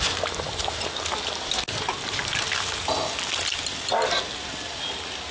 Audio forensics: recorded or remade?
recorded